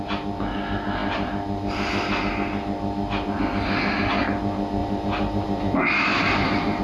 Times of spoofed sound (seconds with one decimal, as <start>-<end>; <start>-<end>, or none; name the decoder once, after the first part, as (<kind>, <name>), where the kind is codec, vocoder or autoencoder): 4.8-6.8 (vocoder, BigVGAN v2)